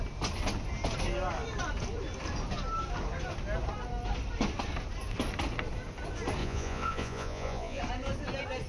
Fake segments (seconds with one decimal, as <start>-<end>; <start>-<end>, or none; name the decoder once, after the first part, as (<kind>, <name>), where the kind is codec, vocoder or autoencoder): 6.4-7.8 (vocoder, Vocos)